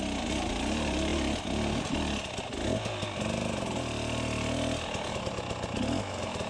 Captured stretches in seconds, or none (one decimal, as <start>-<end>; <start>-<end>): 0.0-6.5

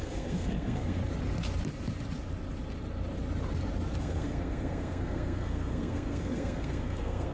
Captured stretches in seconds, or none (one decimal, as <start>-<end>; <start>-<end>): 1.0-4.0

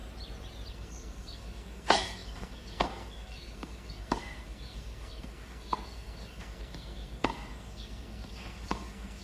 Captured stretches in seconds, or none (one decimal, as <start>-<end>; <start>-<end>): 0.0-0.7